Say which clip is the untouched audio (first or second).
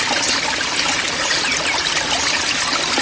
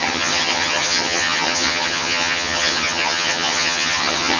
first